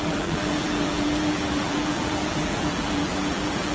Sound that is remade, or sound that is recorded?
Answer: remade